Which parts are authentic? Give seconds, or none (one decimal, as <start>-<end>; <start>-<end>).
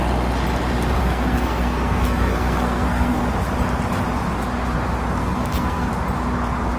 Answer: 0.0-1.0; 3.2-5.2; 5.9-6.8